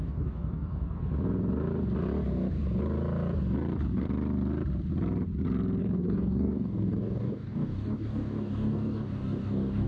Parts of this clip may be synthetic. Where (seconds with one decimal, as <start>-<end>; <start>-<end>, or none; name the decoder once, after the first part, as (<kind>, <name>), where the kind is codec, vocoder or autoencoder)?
0.0-1.0 (codec, DAC); 5.8-9.9